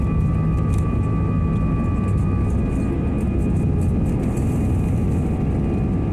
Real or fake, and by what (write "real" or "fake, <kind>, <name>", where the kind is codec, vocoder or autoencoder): real